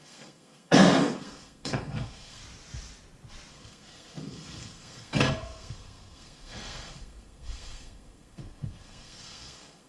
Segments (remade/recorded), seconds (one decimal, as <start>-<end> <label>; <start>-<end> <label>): 0.0-2.4 remade; 2.4-3.5 recorded; 3.5-9.9 remade